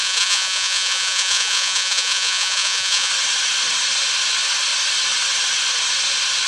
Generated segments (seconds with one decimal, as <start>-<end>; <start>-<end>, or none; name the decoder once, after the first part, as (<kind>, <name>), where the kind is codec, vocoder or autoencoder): 0.0-3.1 (vocoder, Vocos)